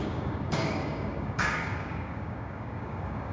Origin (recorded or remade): remade